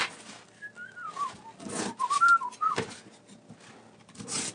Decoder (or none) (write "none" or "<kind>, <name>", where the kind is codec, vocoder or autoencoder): none